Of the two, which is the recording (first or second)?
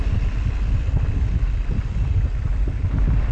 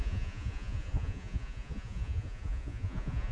first